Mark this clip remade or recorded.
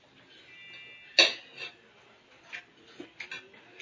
recorded